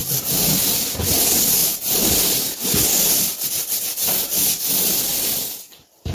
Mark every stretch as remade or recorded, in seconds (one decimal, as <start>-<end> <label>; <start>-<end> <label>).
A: 0.0-6.1 recorded